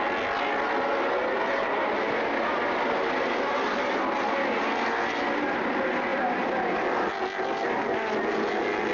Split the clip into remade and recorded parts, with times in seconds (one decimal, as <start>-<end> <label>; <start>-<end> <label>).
0.0-8.9 recorded